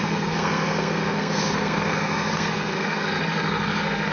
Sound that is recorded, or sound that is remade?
remade